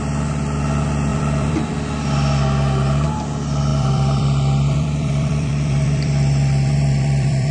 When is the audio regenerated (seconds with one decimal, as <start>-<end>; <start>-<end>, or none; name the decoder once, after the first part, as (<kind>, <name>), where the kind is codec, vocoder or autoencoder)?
1.1-1.7 (vocoder, BigVGAN v2); 3.7-7.5